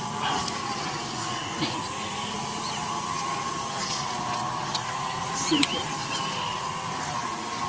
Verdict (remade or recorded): remade